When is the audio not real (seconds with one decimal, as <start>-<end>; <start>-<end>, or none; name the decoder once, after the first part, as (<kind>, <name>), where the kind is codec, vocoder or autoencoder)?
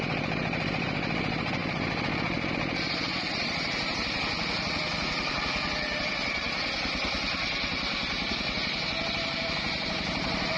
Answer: none